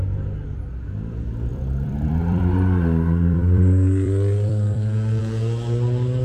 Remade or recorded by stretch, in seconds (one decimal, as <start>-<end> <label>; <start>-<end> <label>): 0.0-1.5 recorded; 1.5-5.2 remade; 5.2-6.2 recorded